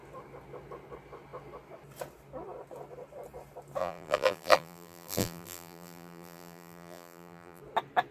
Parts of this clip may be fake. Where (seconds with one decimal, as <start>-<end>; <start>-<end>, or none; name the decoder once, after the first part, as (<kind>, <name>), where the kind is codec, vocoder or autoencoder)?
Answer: 3.8-7.6 (vocoder, BigVGAN v2)